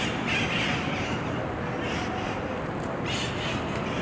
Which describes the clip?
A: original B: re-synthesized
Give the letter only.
A